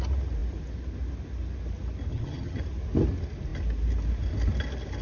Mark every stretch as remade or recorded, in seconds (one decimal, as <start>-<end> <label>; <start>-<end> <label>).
0.0-2.1 recorded; 2.1-2.6 remade; 2.6-5.0 recorded